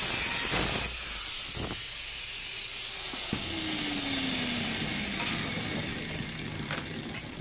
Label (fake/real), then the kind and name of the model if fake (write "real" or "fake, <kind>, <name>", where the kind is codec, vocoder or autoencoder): real